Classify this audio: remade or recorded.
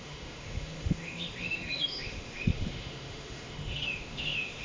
remade